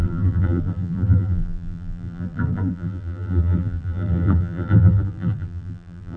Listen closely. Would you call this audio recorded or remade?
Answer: remade